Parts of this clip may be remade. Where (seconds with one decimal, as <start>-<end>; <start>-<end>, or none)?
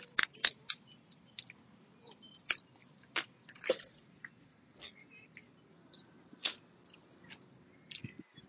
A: none